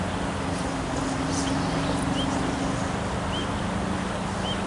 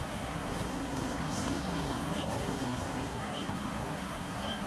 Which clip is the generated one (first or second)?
second